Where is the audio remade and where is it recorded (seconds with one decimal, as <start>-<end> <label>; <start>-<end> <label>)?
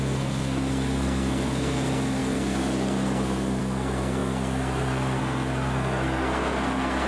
0.0-7.1 remade